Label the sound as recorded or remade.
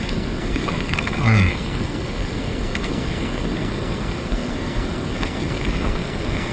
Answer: remade